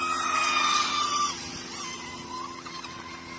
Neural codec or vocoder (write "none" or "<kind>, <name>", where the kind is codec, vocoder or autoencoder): none